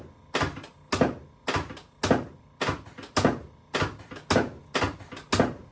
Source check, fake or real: real